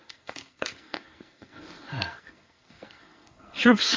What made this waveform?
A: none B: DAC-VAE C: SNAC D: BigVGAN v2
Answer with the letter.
C